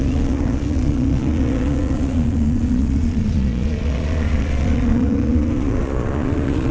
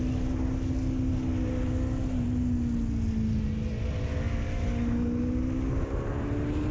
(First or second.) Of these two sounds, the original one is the second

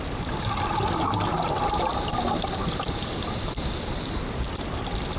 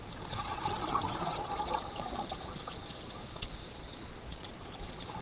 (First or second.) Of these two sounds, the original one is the first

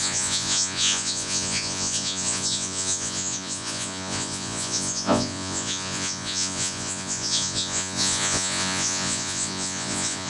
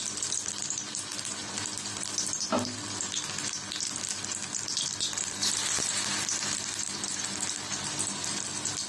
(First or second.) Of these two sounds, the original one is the second